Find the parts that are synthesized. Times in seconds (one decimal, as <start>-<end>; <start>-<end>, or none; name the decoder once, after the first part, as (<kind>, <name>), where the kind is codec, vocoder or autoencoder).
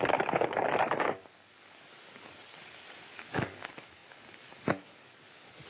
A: 0.0-5.7 (codec, DAC)